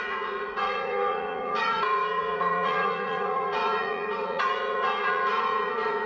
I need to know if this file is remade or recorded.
remade